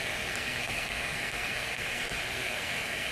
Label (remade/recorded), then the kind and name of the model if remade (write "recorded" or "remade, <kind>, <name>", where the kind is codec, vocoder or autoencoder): remade, codec, SNAC